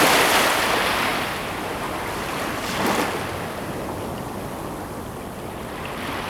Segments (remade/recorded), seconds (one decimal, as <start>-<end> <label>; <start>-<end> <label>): 0.0-6.3 recorded